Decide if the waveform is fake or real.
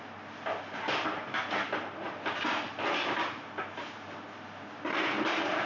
real